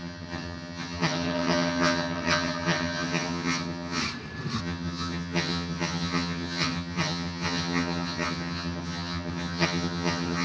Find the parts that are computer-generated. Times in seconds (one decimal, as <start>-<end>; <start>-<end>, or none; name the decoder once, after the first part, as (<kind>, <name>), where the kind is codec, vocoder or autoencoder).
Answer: 0.0-4.0 (vocoder, HiFi-GAN); 4.6-10.4